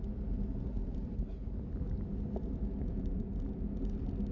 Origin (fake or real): real